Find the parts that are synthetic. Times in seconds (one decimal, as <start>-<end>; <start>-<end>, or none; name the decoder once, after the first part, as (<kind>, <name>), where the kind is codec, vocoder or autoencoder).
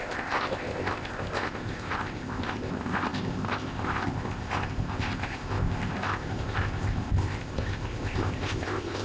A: 0.0-9.0 (codec, ZipCodec)